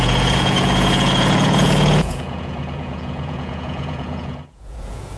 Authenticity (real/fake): fake